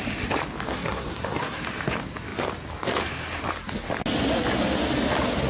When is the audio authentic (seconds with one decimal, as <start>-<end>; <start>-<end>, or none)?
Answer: 0.0-0.7; 1.6-5.5